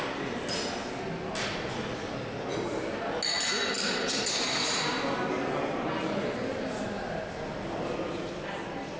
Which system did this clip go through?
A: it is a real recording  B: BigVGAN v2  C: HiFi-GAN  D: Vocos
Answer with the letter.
A